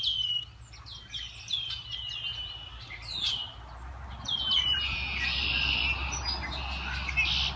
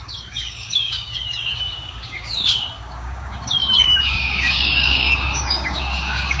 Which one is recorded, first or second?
first